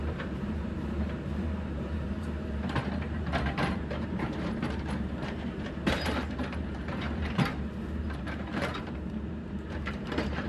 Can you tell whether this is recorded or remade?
remade